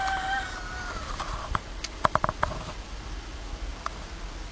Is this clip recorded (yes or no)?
yes